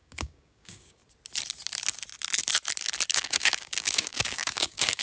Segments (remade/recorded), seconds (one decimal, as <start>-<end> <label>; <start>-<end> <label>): 0.0-1.0 remade; 1.0-3.1 recorded; 3.1-5.0 remade